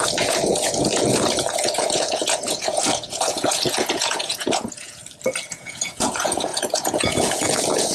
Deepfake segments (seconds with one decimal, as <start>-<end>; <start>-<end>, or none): 0.0-5.0; 5.5-7.9